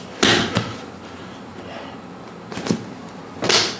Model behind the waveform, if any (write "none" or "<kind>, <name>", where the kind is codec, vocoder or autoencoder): none